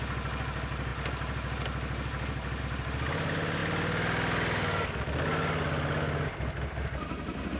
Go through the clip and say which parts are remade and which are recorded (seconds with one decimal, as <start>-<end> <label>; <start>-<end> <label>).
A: 0.0-7.6 recorded